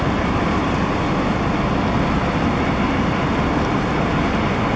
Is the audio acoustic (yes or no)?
yes